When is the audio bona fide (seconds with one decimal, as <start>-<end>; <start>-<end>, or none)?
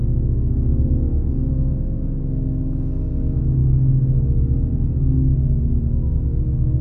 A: 0.0-6.8